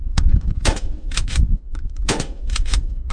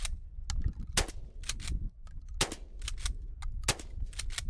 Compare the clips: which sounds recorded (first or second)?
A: second